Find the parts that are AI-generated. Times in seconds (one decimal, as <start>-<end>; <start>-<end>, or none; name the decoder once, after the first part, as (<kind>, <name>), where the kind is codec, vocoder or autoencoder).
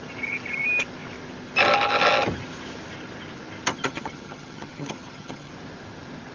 3.7-5.5 (vocoder, HiFi-GAN)